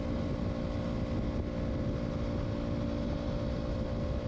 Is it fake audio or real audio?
real